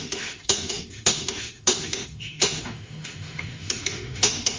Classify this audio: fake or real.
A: fake